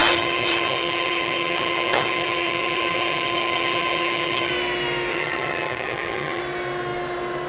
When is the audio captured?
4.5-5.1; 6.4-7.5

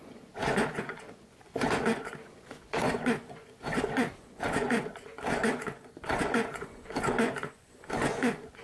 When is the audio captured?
none